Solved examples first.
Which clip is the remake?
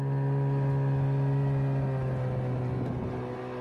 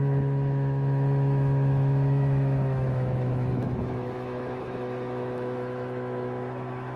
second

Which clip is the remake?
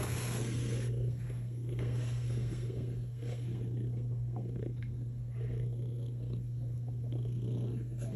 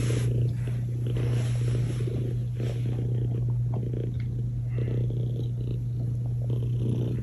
first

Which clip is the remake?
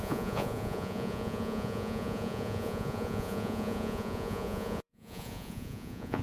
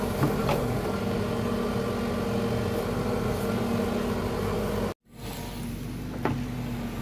first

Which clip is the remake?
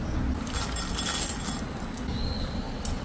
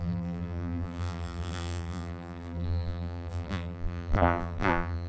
second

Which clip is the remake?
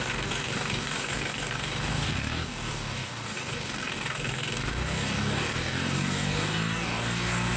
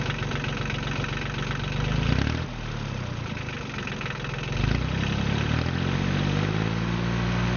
first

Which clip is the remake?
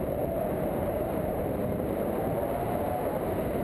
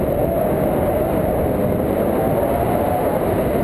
first